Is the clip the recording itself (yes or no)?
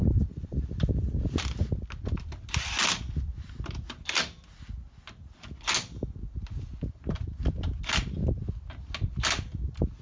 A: yes